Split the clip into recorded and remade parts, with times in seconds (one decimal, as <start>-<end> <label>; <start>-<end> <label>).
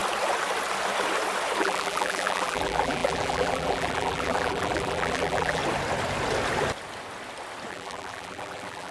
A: 0.0-1.6 recorded; 1.6-5.6 remade; 5.6-7.7 recorded; 7.7-8.9 remade